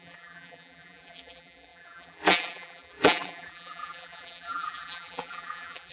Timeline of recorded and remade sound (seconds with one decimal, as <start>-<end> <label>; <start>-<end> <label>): 0.0-5.9 remade

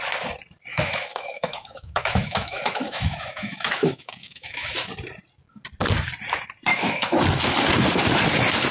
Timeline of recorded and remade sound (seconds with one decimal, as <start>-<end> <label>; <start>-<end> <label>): 0.0-0.7 recorded; 0.7-4.9 remade; 4.9-6.7 recorded; 6.7-7.2 remade; 7.2-8.7 recorded

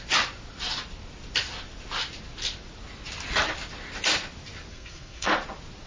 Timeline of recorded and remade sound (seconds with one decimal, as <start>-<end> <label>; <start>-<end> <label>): 0.0-4.7 recorded; 4.7-5.3 remade; 5.3-5.9 recorded

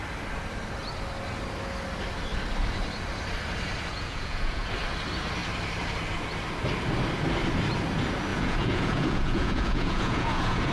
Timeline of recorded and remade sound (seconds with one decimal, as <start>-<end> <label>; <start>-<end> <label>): 0.0-3.9 recorded; 3.9-4.7 remade; 4.7-8.3 recorded; 8.3-10.7 remade

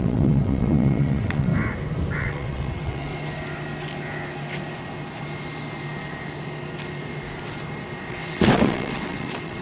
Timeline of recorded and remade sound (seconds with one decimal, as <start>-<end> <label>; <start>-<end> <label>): 0.0-1.5 remade; 1.5-2.2 recorded; 2.2-3.1 remade; 3.1-8.1 recorded; 8.1-9.6 remade

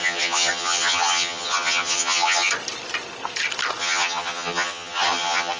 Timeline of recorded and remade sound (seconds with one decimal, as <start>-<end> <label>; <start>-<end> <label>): 0.0-2.5 remade; 2.5-3.8 recorded; 3.8-5.6 remade

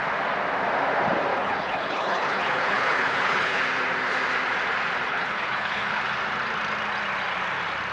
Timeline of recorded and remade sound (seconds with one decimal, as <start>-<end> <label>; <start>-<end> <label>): 0.0-1.3 recorded; 1.3-3.6 remade; 3.6-5.1 recorded; 5.1-6.0 remade; 6.0-7.9 recorded

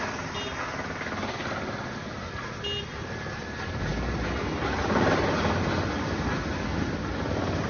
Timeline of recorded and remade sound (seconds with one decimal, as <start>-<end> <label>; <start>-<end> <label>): 0.0-7.7 recorded